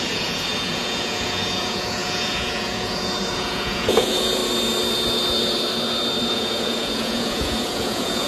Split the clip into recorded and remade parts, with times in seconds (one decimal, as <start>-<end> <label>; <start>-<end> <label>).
0.0-4.4 remade; 4.4-6.3 recorded; 6.3-8.3 remade